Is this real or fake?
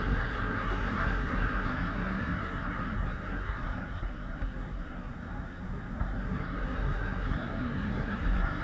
fake